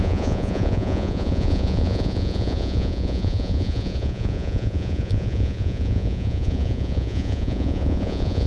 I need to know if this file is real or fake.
fake